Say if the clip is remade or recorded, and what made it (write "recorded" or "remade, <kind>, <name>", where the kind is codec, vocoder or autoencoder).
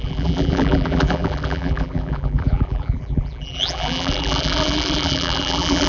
remade, vocoder, BigVGAN v2